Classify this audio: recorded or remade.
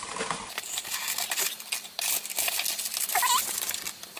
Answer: recorded